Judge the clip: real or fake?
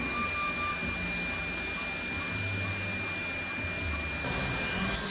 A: real